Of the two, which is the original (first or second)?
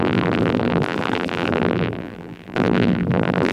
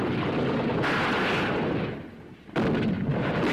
second